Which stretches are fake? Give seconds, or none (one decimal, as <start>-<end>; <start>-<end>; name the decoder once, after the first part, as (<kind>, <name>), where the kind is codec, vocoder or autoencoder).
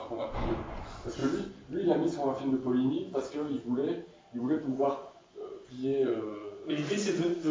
0.0-1.2 (vocoder, Vocos); 2.9-3.8; 4.4-7.5